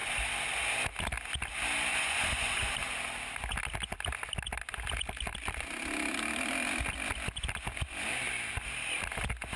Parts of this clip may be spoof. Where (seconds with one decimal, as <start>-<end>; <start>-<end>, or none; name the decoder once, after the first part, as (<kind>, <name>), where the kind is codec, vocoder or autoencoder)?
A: 1.9-2.7 (vocoder, Vocos)